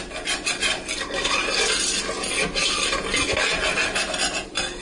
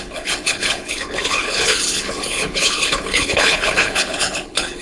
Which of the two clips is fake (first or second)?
second